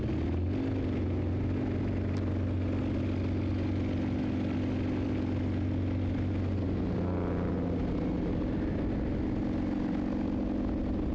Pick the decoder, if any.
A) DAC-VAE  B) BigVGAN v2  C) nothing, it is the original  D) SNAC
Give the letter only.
C